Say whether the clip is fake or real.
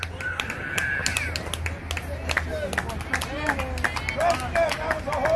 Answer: real